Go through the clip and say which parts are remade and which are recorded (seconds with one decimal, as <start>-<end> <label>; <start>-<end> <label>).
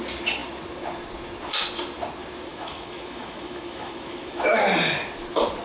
0.0-2.5 recorded; 2.5-4.6 remade; 4.6-5.6 recorded